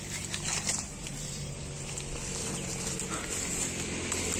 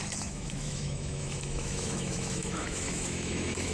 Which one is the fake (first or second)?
second